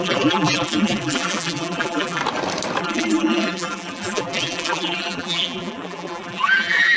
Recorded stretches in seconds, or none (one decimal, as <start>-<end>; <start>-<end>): 2.2-2.8